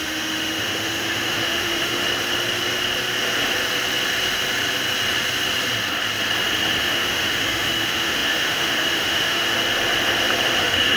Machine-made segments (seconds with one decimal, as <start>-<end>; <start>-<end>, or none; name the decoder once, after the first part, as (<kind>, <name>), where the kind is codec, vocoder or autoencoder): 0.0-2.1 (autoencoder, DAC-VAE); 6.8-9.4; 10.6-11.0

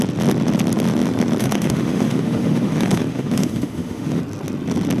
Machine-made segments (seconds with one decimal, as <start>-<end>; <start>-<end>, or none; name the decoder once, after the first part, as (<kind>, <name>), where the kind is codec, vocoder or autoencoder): 1.4-4.2 (autoencoder, DAC-VAE)

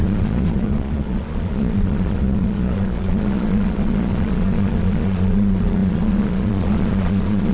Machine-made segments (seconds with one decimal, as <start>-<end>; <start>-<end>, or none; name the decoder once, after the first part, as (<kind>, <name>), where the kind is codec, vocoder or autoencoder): 0.0-7.5 (vocoder, Vocos)

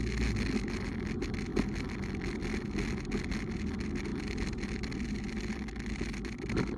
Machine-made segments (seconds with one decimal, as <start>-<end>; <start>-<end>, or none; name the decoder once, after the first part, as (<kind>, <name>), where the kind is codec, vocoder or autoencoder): none

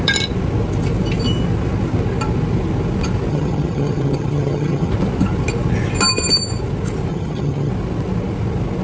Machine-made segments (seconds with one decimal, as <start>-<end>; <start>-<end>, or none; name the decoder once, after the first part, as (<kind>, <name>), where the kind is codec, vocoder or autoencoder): 3.3-4.9 (vocoder, HiFi-GAN); 7.1-7.7

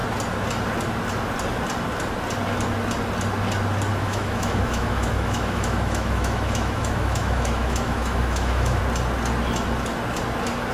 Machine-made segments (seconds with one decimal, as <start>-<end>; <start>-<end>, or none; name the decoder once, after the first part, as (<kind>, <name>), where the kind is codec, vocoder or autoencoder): 3.9-8.8 (autoencoder, DAC-VAE)

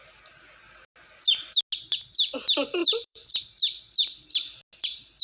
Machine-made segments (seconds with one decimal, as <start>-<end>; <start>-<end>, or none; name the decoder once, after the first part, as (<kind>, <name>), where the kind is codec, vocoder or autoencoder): 2.8-3.4 (vocoder, BigVGAN v2)